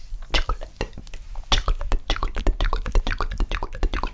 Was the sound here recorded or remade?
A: recorded